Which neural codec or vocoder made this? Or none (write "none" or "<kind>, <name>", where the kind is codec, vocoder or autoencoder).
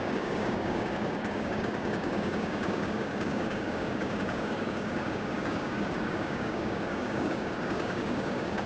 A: codec, DAC